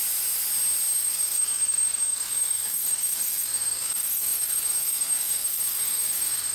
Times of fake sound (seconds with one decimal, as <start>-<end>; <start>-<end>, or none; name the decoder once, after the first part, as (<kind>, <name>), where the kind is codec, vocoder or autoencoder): 0.9-6.5 (codec, SNAC)